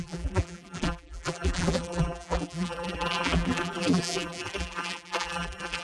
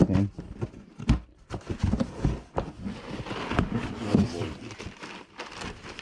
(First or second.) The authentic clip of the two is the second